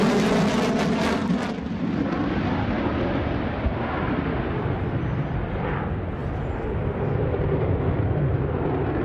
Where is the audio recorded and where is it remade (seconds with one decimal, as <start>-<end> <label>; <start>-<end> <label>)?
0.0-9.0 recorded